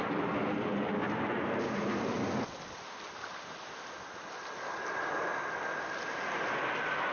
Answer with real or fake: real